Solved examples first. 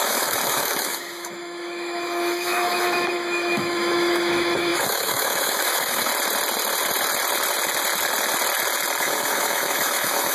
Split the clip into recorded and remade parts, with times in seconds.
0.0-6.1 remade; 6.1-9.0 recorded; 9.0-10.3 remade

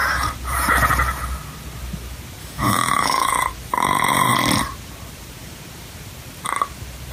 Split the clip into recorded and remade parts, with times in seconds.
0.0-2.4 recorded; 2.4-3.3 remade; 3.3-7.1 recorded

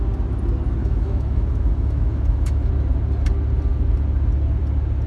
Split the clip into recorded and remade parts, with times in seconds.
0.0-0.8 recorded; 0.8-2.7 remade; 2.7-5.1 recorded

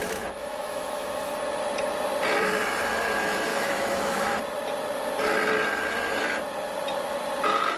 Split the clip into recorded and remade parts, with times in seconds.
0.0-1.3 remade; 1.3-3.5 recorded; 3.5-4.4 remade; 4.4-7.8 recorded

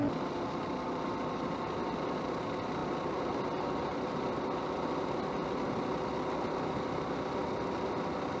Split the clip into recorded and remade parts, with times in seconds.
0.0-8.4 recorded